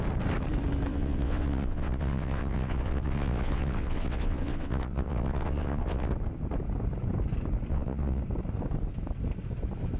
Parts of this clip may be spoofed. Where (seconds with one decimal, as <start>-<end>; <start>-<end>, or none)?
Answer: 0.9-6.1; 7.7-8.2